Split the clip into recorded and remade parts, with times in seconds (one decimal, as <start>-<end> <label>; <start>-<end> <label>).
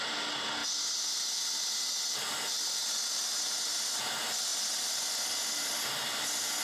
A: 0.0-6.6 recorded